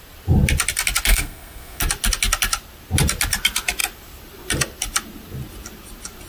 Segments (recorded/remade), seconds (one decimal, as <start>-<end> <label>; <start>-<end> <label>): 0.0-1.1 recorded; 1.1-1.8 remade; 1.8-6.3 recorded